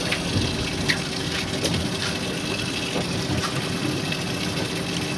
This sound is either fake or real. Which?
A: real